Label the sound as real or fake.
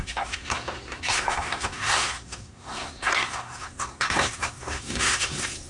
fake